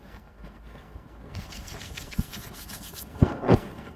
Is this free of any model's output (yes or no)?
no